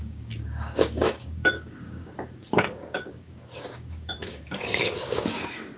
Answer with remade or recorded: remade